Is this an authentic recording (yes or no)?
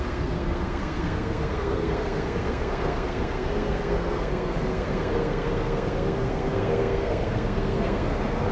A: no